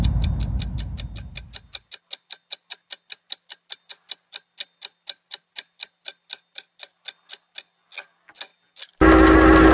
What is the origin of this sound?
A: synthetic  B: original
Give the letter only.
B